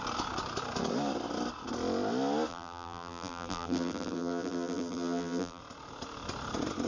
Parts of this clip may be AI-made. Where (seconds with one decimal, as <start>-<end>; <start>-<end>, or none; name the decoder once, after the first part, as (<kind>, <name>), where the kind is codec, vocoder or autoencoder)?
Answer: 2.5-5.6 (vocoder, BigVGAN v2)